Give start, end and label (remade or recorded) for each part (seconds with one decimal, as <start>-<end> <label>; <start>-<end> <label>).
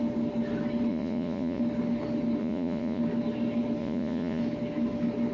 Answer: 0.0-0.9 recorded; 0.9-1.6 remade; 1.6-2.4 recorded; 2.4-3.0 remade; 3.0-3.8 recorded; 3.8-4.4 remade; 4.4-5.3 recorded